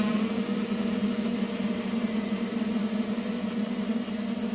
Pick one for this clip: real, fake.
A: fake